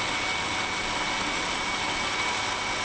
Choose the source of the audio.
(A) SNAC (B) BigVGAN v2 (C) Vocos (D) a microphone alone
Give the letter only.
D